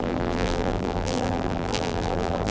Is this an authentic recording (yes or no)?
no